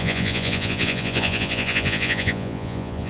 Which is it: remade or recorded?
remade